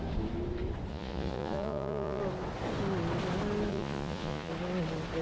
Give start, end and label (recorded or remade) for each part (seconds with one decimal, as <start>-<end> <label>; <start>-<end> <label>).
0.0-0.9 recorded; 0.9-2.2 remade; 2.2-3.7 recorded; 3.7-4.5 remade; 4.5-5.2 recorded

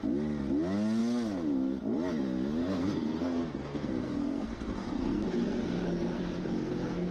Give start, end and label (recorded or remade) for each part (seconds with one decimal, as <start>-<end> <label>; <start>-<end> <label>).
0.0-2.6 recorded; 2.6-7.1 remade

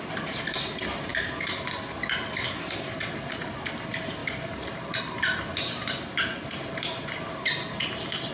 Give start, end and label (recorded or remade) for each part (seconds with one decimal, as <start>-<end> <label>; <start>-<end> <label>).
0.0-8.3 recorded

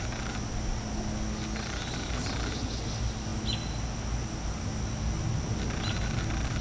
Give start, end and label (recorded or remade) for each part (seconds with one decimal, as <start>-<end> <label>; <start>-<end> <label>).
0.0-6.6 recorded

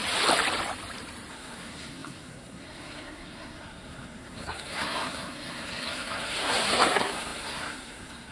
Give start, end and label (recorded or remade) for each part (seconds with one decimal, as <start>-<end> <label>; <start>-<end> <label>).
0.0-1.3 recorded; 1.3-8.3 remade

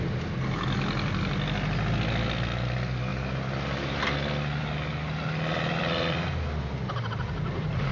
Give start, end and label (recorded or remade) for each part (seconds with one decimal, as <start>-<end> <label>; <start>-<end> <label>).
0.0-7.9 recorded

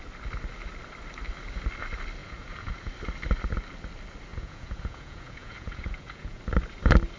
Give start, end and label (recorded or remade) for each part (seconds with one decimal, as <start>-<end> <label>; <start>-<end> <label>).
0.0-2.2 recorded; 2.2-2.9 remade; 2.9-4.3 recorded; 4.3-6.4 remade; 6.4-7.2 recorded

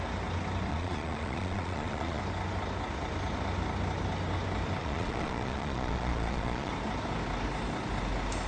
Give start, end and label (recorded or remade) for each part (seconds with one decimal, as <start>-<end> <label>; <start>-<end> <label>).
0.0-0.7 recorded; 0.7-2.2 remade; 2.2-4.8 recorded; 4.8-6.7 remade; 6.7-8.5 recorded